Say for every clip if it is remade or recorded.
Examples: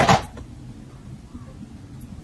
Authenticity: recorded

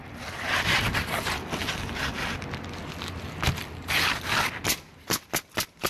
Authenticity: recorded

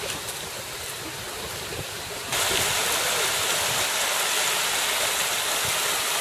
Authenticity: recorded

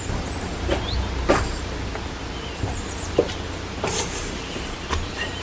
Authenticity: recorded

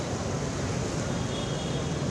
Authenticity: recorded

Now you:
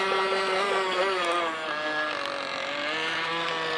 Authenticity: recorded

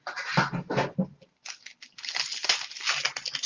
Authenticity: recorded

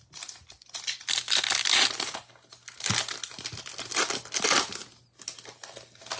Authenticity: recorded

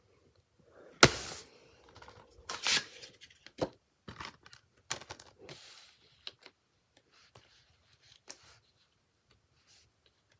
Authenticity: recorded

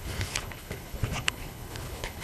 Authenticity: remade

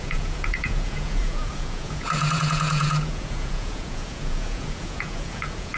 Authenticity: remade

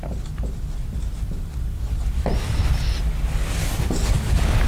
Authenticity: recorded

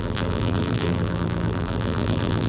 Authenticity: remade